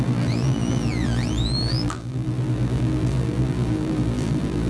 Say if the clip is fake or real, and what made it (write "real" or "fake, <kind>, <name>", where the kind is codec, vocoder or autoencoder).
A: fake, vocoder, BigVGAN v2